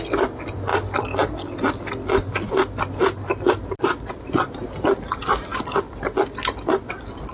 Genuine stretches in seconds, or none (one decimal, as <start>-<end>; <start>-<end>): 0.0-7.3